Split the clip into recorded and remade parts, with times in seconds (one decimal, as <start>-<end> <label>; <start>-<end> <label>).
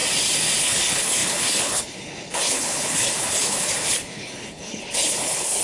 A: 0.0-0.6 recorded; 0.6-5.6 remade